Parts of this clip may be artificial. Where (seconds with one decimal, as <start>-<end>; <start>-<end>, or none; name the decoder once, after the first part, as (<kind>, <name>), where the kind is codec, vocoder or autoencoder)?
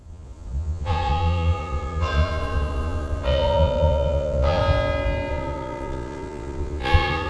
0.0-4.6 (vocoder, Vocos); 5.3-7.3